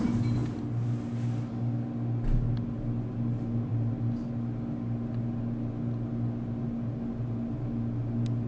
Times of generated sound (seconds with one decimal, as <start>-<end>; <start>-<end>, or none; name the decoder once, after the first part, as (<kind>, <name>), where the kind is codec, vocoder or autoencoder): none

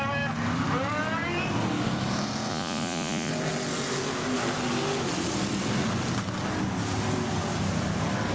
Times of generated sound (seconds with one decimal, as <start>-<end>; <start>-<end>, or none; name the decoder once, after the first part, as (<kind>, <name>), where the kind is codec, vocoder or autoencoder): 2.5-3.3 (vocoder, Vocos)

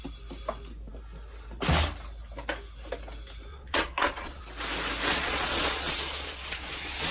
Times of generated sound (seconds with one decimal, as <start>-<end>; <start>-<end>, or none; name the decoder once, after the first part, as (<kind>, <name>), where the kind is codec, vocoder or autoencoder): 3.5-4.4 (vocoder, Vocos); 5.1-7.1

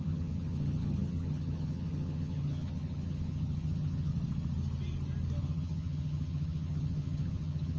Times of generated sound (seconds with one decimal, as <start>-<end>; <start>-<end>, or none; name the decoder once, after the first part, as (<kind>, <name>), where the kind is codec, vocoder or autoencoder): 0.0-4.1 (vocoder, HiFi-GAN); 5.4-7.8

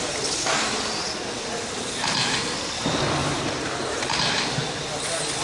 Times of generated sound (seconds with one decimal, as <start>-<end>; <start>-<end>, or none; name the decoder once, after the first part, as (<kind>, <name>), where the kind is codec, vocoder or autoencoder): 3.2-4.2 (vocoder, BigVGAN v2)

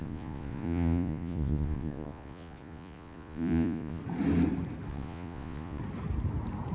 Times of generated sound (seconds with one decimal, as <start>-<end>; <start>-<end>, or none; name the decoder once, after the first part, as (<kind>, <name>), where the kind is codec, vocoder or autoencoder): 0.0-4.0 (vocoder, Vocos); 4.9-5.8